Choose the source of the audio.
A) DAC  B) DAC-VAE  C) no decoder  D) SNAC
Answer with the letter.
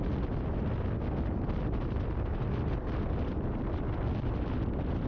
C